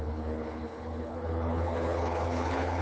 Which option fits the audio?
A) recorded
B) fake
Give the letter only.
B